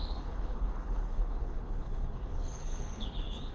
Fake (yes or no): yes